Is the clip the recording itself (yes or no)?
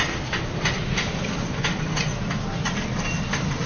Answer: yes